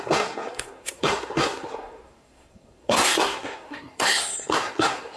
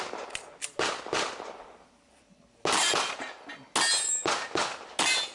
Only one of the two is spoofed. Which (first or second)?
first